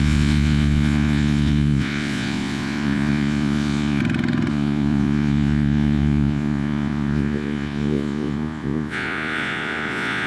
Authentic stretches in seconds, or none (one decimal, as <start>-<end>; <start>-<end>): 4.0-4.5